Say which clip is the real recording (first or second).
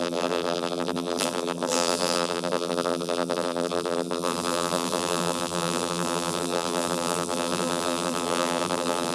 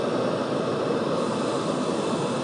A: second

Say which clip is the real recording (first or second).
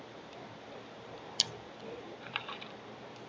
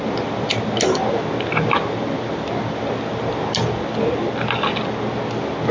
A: second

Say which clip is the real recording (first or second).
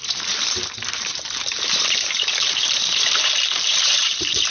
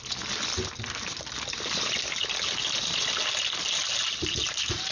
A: second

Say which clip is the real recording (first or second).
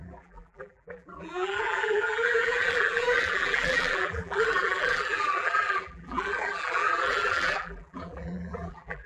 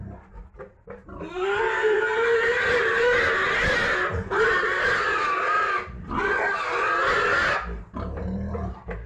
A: second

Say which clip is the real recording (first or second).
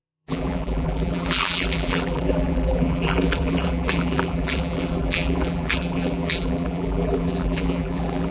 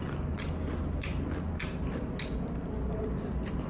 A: second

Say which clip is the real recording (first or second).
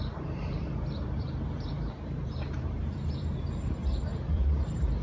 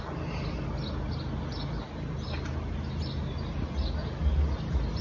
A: second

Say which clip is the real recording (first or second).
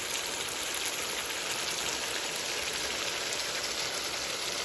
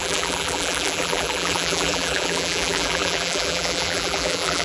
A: first